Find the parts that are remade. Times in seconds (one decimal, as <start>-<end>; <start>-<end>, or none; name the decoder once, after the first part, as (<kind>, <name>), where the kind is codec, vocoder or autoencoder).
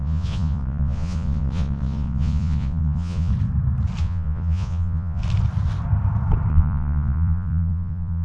0.0-3.3 (vocoder, Vocos); 4.0-5.2; 6.5-8.2